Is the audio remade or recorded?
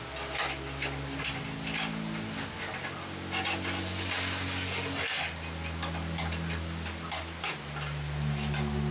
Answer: recorded